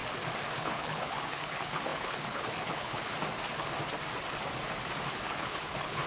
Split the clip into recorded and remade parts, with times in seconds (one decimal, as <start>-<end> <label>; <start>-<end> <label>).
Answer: 0.0-0.6 recorded; 0.6-3.0 remade; 3.0-5.1 recorded; 5.1-6.1 remade